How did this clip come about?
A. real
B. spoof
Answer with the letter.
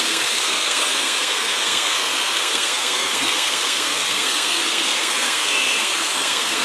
B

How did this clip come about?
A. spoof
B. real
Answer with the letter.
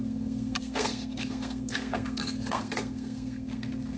A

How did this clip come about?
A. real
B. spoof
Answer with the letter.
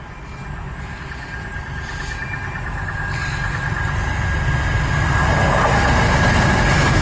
A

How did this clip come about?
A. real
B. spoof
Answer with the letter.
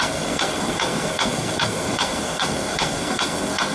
B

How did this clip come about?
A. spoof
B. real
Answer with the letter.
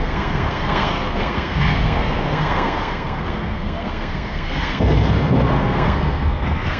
A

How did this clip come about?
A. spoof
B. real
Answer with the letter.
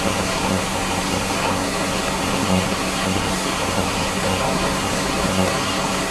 A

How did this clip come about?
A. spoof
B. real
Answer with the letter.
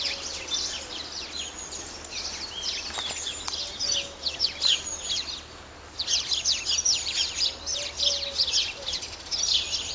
B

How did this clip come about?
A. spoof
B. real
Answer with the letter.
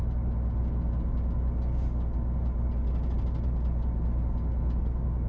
B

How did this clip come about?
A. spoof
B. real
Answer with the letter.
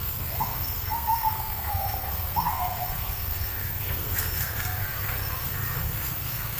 A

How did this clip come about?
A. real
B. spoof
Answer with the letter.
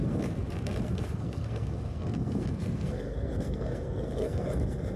B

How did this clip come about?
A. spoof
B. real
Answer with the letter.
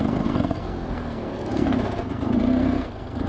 A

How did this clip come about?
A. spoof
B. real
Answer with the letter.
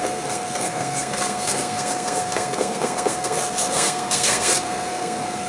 A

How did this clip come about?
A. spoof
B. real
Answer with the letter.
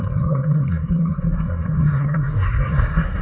A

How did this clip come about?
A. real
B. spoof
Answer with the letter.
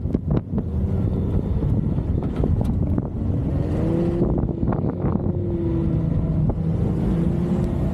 A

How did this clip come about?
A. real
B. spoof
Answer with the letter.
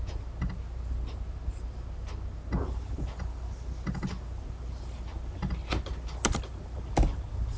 A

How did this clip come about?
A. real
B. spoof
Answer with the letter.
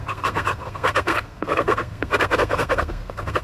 B